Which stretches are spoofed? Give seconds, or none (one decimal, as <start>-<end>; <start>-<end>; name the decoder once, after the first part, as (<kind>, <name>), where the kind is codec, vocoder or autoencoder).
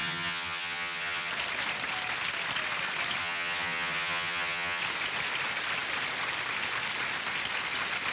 0.0-1.3 (vocoder, HiFi-GAN); 3.2-4.8